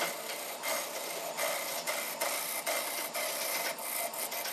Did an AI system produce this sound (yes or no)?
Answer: no